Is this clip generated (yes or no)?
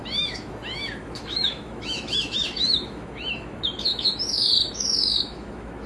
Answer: yes